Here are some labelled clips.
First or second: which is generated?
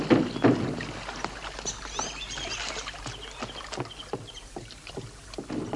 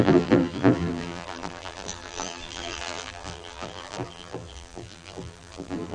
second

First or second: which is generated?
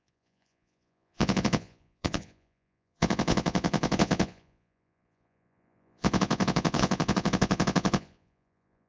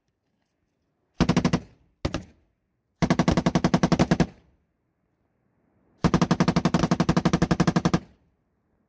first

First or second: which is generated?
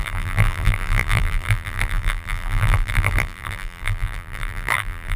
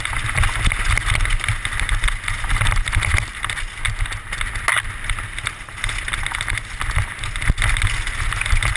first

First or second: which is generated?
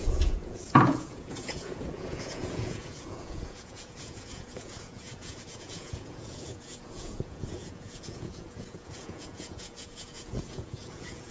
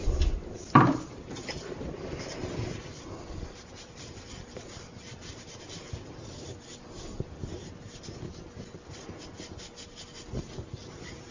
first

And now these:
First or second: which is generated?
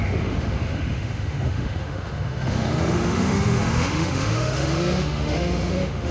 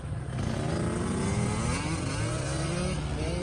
first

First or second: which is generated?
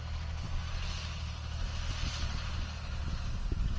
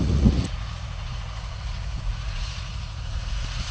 second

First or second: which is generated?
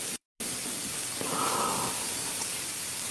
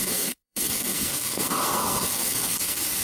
second